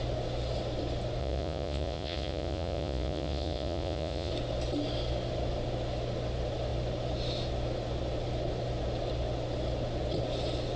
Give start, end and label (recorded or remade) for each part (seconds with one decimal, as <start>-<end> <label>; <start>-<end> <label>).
0.0-1.2 recorded; 1.2-4.3 remade; 4.3-10.8 recorded